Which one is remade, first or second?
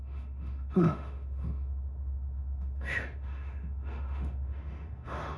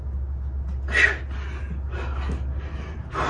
first